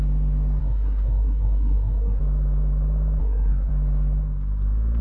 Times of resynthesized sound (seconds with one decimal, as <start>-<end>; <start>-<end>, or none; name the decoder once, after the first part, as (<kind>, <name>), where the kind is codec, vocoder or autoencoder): 0.6-2.2 (codec, SNAC); 3.2-3.7